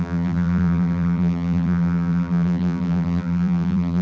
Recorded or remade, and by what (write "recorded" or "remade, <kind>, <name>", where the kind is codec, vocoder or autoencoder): remade, vocoder, BigVGAN v2